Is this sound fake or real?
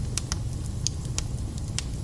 real